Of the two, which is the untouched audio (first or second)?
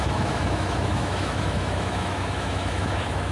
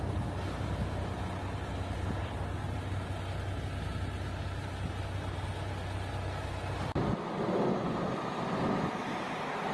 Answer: second